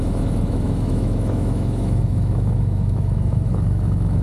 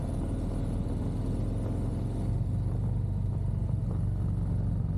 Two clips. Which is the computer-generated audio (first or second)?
first